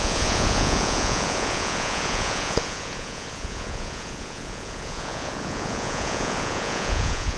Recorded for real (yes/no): no